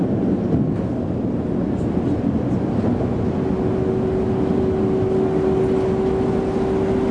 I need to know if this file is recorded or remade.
recorded